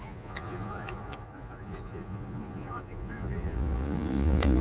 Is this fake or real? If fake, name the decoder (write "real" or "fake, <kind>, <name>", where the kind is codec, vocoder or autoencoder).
fake, vocoder, Vocos